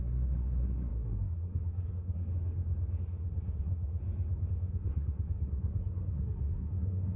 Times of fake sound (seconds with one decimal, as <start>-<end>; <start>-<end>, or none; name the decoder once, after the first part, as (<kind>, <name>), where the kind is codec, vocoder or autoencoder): 0.0-2.3 (codec, SNAC); 3.0-4.0; 4.5-7.2